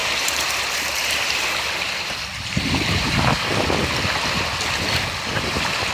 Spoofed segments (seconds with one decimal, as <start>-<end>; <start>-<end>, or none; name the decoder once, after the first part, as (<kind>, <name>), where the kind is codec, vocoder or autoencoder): none

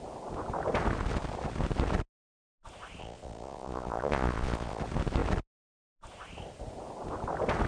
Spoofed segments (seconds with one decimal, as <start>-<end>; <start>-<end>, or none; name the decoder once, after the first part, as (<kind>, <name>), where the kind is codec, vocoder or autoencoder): 3.0-4.8 (vocoder, Vocos)

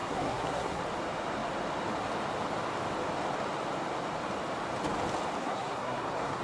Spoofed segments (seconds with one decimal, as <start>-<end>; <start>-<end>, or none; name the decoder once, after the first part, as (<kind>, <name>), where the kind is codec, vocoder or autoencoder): 0.0-0.8 (codec, SNAC); 5.4-6.4